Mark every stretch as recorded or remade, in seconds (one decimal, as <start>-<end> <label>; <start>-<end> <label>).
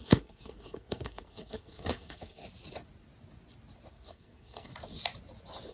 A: 0.0-2.4 remade; 2.4-3.9 recorded; 3.9-4.7 remade; 4.7-5.7 recorded